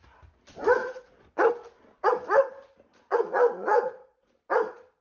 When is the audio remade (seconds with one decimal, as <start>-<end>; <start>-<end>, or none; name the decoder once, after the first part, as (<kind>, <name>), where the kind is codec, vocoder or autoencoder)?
0.8-1.5 (vocoder, Vocos); 2.9-4.3